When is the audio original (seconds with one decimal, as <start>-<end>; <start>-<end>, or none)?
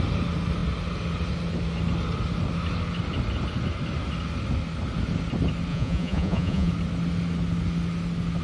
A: 0.0-5.7; 6.7-8.4